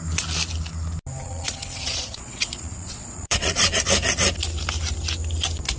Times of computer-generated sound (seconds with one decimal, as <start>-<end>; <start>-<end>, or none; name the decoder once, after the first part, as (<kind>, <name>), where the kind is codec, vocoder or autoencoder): 1.2-3.8 (vocoder, Vocos)